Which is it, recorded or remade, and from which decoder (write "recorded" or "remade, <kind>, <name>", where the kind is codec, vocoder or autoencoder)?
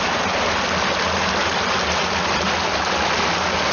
recorded